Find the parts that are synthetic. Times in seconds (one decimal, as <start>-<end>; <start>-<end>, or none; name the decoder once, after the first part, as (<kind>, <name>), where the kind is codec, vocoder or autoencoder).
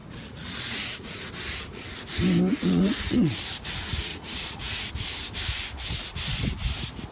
0.0-1.3 (vocoder, Vocos); 2.5-3.3; 4.1-4.9